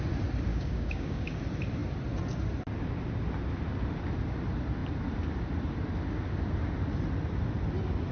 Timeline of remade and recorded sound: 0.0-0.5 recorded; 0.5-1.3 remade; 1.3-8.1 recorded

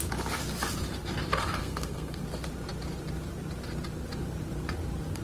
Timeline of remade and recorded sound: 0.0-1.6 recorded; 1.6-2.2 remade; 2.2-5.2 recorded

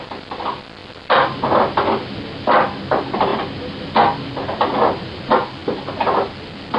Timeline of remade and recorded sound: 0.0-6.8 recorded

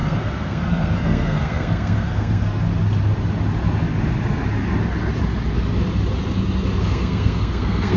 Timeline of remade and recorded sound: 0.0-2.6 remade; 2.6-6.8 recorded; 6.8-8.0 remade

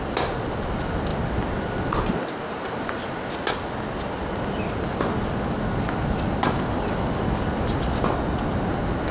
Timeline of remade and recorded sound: 0.0-9.1 recorded

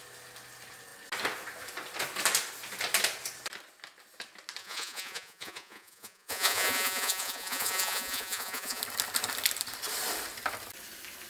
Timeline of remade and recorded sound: 0.0-4.6 recorded; 4.6-8.8 remade; 8.8-11.3 recorded

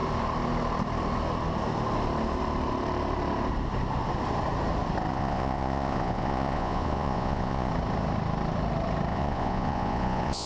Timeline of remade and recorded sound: 0.0-5.1 recorded; 5.1-7.7 remade; 7.7-9.1 recorded; 9.1-10.5 remade

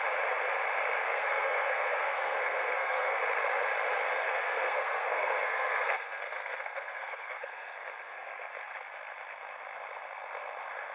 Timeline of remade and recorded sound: 0.0-1.0 recorded; 1.0-3.2 remade; 3.2-4.1 recorded; 4.1-8.5 remade; 8.5-10.9 recorded